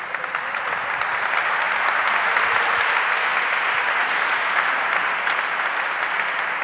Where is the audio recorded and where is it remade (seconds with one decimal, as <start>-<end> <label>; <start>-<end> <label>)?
0.0-6.6 recorded